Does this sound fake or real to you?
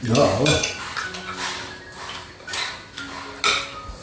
real